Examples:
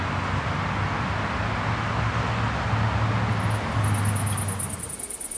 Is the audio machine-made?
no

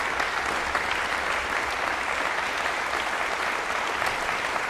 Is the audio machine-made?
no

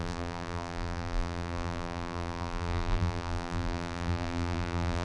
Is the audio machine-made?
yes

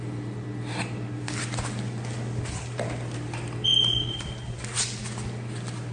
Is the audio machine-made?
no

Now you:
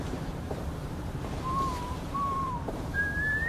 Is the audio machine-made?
yes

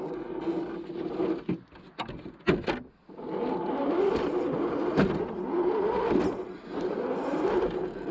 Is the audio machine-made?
no